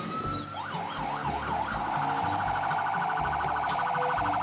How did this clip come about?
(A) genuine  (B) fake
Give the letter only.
A